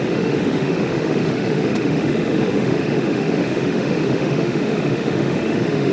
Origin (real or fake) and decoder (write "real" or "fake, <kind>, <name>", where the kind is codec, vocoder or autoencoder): fake, autoencoder, DAC-VAE